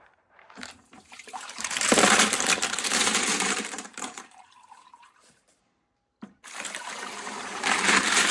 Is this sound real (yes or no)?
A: no